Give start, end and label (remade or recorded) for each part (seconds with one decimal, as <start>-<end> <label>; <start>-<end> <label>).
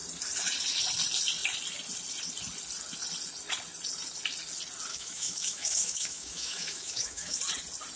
0.0-4.9 recorded; 4.9-7.4 remade; 7.4-8.0 recorded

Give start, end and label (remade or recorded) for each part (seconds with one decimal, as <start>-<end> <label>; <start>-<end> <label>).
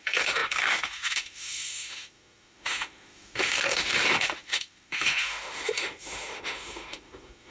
0.0-7.5 remade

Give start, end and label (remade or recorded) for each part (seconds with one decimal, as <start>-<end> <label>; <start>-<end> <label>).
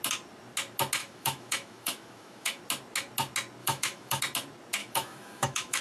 0.0-1.0 recorded; 1.0-2.6 remade; 2.6-3.6 recorded; 3.6-4.2 remade; 4.2-4.8 recorded; 4.8-5.8 remade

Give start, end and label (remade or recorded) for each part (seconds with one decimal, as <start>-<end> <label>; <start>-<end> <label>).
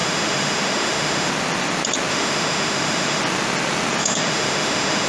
0.0-1.3 remade; 1.3-2.1 recorded; 2.1-3.2 remade; 3.2-4.0 recorded; 4.0-5.1 remade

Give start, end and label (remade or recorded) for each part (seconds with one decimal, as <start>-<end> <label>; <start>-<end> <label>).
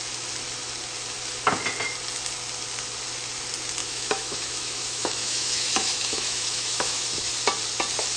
0.0-3.8 recorded; 3.8-7.3 remade; 7.3-8.2 recorded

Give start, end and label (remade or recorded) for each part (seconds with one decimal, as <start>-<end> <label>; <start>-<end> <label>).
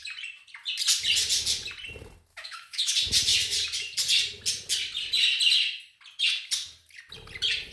0.0-2.3 recorded; 2.3-2.9 remade; 2.9-7.7 recorded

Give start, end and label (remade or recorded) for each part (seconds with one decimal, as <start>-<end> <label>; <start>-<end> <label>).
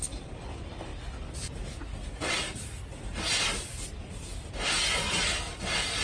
0.0-6.0 recorded